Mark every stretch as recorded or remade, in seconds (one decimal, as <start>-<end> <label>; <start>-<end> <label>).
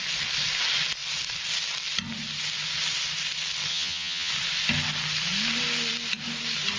0.0-3.7 recorded; 3.7-4.3 remade; 4.3-6.8 recorded